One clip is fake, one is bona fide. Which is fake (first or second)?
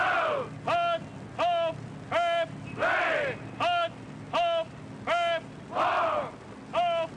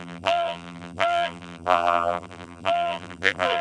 second